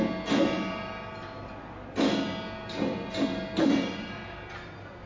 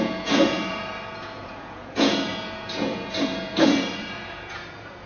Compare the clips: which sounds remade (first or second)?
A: second